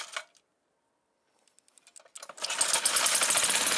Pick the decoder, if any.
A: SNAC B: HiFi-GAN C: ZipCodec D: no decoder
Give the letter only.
D